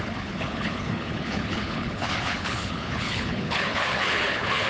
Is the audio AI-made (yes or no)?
yes